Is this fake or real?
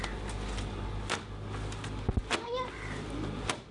real